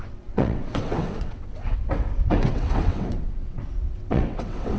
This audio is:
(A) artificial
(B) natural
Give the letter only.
A